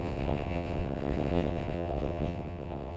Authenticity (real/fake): fake